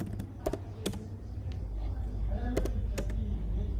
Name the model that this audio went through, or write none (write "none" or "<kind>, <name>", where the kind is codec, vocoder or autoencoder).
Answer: none